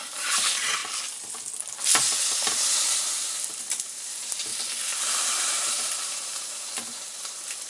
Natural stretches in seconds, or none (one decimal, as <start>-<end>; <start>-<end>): 0.8-3.6; 4.5-5.4